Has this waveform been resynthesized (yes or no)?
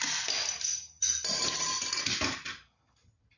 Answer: no